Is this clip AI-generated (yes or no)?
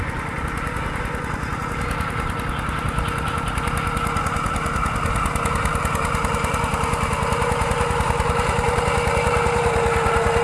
no